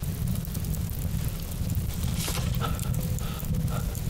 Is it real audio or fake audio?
real